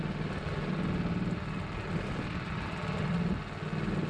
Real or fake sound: real